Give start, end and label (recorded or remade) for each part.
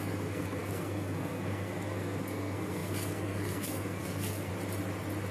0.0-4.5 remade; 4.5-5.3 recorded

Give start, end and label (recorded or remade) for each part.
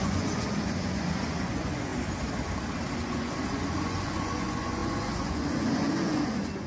0.0-1.9 remade; 1.9-3.0 recorded; 3.0-6.7 remade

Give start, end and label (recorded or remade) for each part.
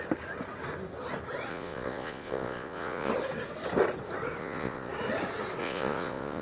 0.0-1.5 recorded; 1.5-3.1 remade; 3.1-4.4 recorded; 4.4-4.9 remade; 4.9-5.6 recorded; 5.6-6.4 remade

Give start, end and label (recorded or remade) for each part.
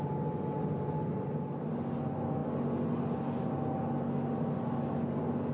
0.0-5.5 recorded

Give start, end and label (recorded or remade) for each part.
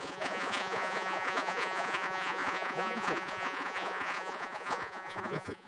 0.0-5.7 remade